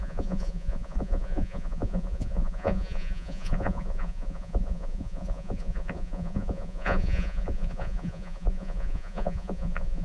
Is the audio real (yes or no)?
no